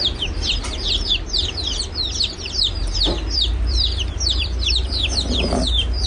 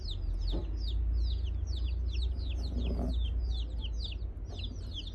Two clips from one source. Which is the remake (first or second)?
first